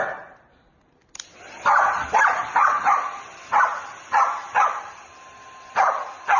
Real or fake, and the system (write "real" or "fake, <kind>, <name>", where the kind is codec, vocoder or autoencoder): real